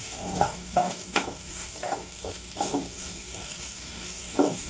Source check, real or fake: fake